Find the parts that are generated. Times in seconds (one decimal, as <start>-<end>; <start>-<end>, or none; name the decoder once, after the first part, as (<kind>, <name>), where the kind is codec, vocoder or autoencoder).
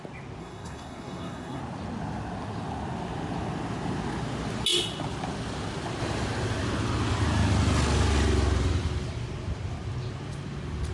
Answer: 0.4-1.6 (codec, SNAC)